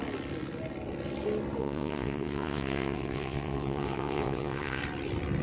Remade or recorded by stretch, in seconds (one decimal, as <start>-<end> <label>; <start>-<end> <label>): 0.0-1.6 recorded; 1.6-4.8 remade; 4.8-5.4 recorded

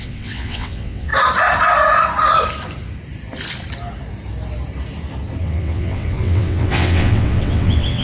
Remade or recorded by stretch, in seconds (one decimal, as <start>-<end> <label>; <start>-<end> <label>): 0.0-1.1 remade; 1.1-5.4 recorded; 5.4-8.0 remade